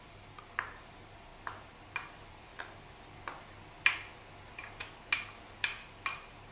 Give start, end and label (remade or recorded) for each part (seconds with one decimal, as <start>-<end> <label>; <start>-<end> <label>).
0.0-6.5 recorded